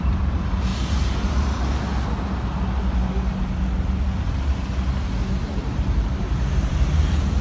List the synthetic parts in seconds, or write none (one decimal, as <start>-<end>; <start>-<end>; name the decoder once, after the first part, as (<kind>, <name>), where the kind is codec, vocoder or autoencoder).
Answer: 0.7-1.8 (vocoder, BigVGAN v2); 5.6-7.4

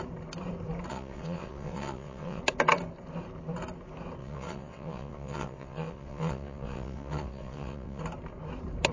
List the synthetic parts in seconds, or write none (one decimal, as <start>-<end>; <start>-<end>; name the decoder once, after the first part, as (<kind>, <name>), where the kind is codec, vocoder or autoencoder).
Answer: 0.9-2.4 (vocoder, WaveNeXt); 4.2-8.0

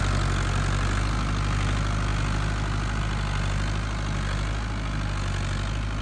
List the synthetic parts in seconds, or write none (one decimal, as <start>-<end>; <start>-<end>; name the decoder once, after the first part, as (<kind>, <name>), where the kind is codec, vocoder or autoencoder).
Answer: none

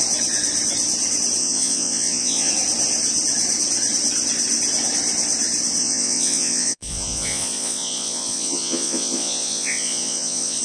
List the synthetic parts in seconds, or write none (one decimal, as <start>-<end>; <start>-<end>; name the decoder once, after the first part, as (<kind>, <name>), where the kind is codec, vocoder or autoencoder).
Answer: 1.4-2.5 (vocoder, Vocos); 5.8-10.6

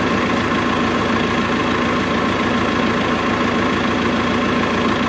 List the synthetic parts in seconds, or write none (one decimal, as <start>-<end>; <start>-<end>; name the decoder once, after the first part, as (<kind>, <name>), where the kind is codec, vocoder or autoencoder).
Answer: none

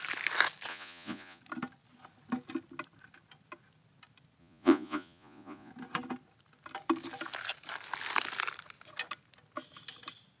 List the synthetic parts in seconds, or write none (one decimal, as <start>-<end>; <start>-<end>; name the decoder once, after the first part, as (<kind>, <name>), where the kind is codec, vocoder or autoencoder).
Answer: 0.7-1.4 (vocoder, Vocos); 4.4-5.7

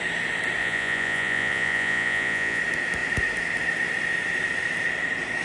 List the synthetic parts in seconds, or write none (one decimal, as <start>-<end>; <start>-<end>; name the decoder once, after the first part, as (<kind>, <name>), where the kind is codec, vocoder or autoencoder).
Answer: 0.6-2.6 (vocoder, Vocos)

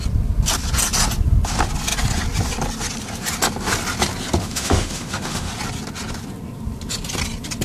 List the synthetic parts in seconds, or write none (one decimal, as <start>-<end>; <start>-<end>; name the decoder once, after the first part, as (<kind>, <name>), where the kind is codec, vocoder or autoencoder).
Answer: 4.4-5.5 (autoencoder, DAC-VAE)